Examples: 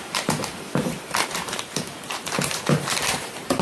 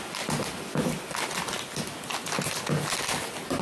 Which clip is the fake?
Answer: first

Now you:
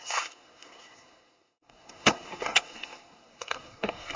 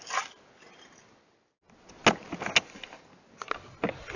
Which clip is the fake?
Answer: first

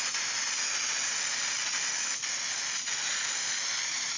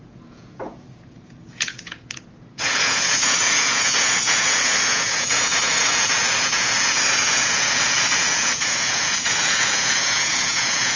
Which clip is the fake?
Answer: second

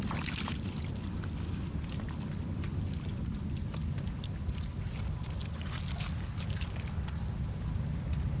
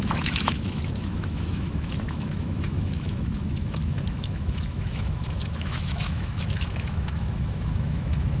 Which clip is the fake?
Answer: second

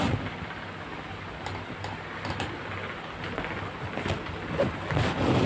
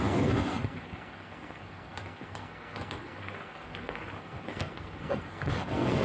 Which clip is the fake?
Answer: second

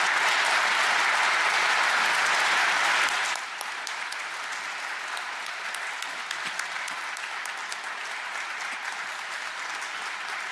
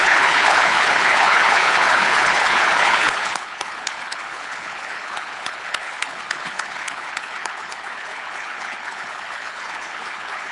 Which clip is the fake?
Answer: second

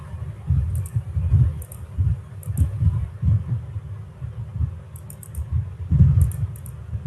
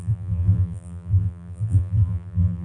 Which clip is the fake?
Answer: second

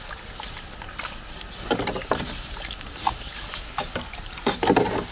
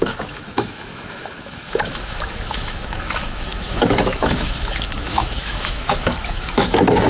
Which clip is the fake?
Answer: second